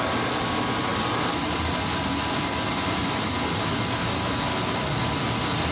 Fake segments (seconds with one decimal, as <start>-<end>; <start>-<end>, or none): none